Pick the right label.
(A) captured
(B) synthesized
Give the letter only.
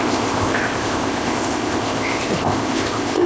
B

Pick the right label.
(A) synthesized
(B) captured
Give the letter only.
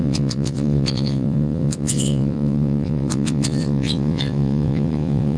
A